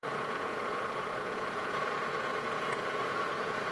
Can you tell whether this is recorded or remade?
remade